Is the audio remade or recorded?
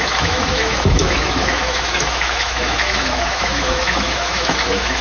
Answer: remade